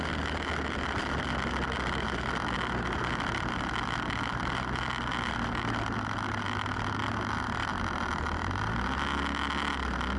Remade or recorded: recorded